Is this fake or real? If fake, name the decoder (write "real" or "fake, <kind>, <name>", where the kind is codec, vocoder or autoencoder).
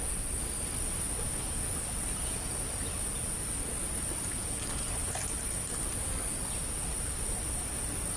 real